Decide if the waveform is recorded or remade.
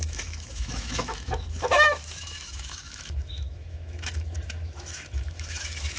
remade